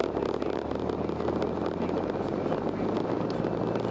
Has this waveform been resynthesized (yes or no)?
no